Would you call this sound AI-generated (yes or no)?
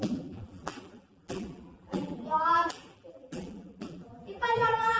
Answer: yes